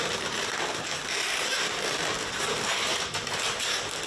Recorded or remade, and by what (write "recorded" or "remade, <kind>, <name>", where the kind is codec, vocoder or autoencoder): remade, vocoder, BigVGAN v2